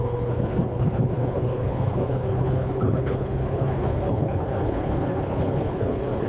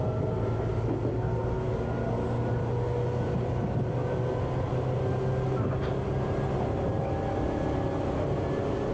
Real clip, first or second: second